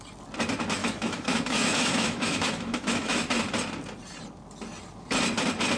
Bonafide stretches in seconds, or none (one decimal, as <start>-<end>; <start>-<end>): 0.0-0.8; 3.3-5.8